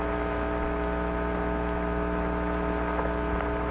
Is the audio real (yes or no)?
yes